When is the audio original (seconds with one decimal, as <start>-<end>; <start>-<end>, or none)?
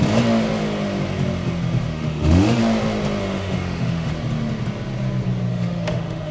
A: 0.0-1.9; 2.6-3.2; 4.1-5.5